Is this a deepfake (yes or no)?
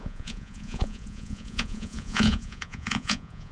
yes